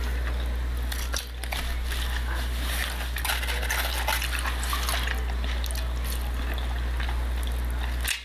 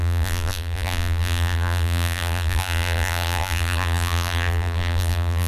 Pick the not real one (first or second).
second